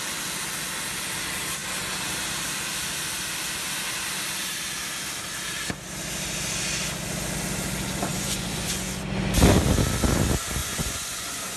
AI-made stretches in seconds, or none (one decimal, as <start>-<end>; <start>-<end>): 8.1-9.0; 10.6-11.6